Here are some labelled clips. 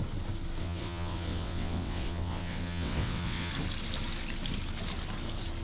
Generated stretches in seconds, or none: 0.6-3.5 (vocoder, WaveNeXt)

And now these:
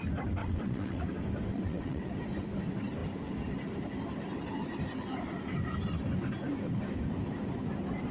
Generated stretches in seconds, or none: 0.4-1.1 (vocoder, WaveNeXt); 1.5-2.1

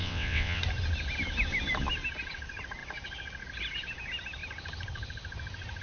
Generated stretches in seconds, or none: 0.0-0.6 (vocoder, WaveNeXt)

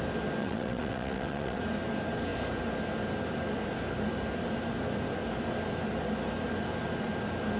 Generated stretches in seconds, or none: 0.4-1.6 (vocoder, WaveNeXt)

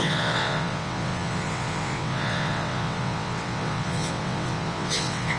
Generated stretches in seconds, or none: 0.0-5.4 (vocoder, WaveNeXt)

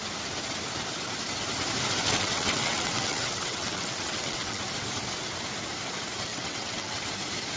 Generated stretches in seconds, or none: 2.0-4.6 (vocoder, WaveNeXt); 6.3-7.0

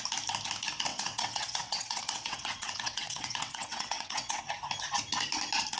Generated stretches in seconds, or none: 0.9-4.4 (vocoder, WaveNeXt)